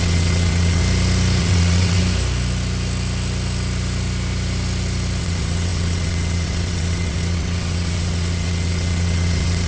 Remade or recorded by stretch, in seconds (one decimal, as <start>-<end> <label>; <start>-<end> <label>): 0.0-0.8 remade; 0.8-1.4 recorded; 1.4-2.0 remade; 2.0-5.2 recorded; 5.2-9.7 remade